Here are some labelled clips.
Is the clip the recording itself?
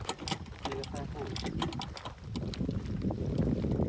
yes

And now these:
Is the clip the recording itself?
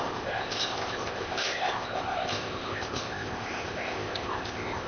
no